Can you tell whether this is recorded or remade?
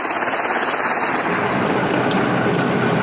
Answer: recorded